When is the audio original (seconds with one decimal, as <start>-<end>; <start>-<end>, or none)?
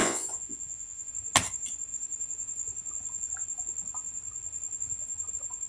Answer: 1.1-5.7